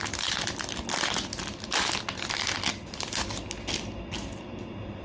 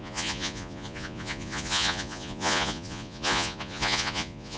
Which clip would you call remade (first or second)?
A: second